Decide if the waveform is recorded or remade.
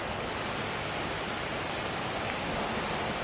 recorded